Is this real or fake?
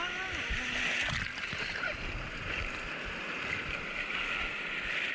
real